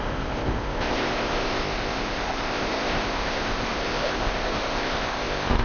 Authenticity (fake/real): fake